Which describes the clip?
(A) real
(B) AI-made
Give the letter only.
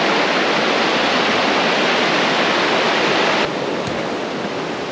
A